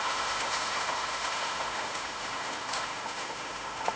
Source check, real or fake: fake